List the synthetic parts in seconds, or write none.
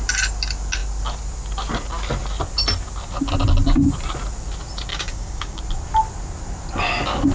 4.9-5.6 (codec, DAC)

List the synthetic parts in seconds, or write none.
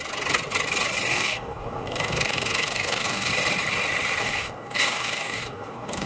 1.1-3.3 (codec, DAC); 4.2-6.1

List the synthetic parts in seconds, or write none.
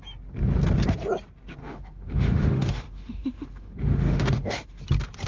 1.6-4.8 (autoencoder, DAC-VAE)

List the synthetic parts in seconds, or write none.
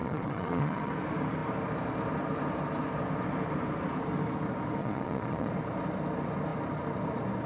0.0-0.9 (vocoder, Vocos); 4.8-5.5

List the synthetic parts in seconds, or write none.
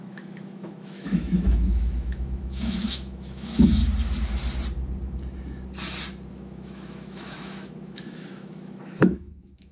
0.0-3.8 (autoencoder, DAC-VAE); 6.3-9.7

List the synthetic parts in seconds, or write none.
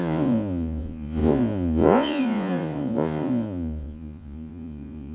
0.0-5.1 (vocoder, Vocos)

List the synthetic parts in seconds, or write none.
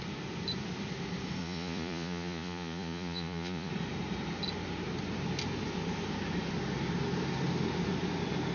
1.4-3.7 (vocoder, Vocos)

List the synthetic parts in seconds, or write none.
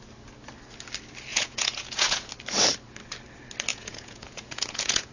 1.3-2.3 (vocoder, Vocos); 3.7-5.1